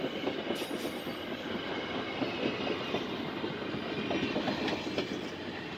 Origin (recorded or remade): recorded